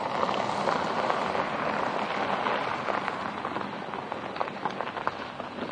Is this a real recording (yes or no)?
yes